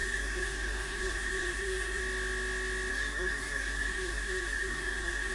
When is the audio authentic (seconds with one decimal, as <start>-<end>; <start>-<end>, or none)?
2.0-2.9